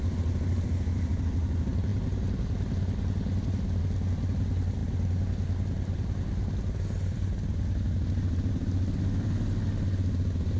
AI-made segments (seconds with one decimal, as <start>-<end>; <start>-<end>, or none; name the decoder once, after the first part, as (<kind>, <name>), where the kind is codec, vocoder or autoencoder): none